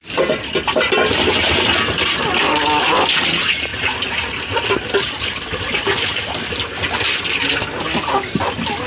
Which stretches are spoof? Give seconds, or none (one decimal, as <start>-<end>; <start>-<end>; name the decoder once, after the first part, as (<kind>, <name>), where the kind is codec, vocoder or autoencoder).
none